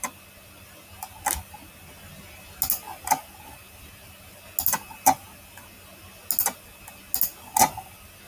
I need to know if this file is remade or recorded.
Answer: recorded